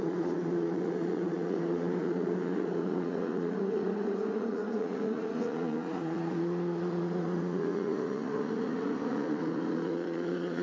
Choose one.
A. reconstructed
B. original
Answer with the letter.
A